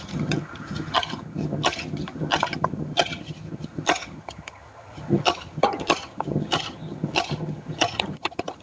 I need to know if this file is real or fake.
fake